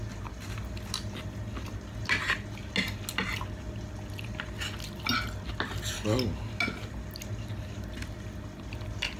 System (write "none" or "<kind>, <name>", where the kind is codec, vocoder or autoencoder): none